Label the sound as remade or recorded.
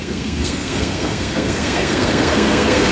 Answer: remade